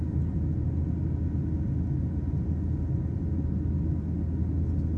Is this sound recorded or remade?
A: recorded